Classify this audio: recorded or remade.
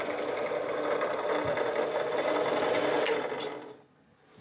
recorded